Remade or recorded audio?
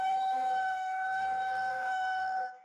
remade